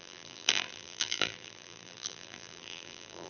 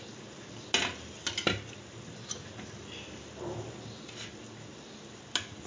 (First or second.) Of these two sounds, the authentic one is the second